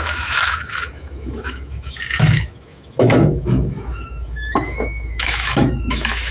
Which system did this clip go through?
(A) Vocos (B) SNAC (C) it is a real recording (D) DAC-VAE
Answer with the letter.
D